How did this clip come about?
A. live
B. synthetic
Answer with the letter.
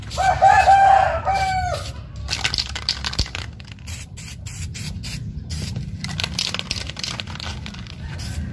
A